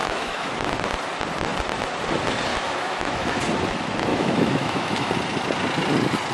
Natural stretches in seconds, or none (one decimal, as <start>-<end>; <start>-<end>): 0.5-2.5; 3.4-4.1; 5.1-6.3